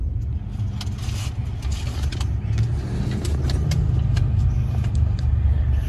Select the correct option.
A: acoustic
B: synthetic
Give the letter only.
A